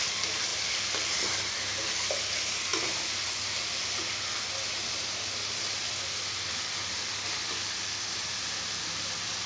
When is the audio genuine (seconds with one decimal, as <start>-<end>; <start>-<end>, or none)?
0.0-9.5